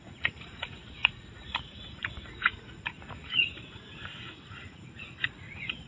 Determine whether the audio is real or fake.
fake